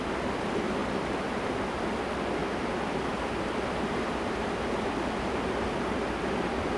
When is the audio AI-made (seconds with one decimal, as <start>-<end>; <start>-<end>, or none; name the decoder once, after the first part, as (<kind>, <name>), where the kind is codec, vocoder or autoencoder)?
none